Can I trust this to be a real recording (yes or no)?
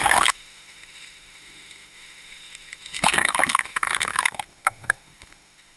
no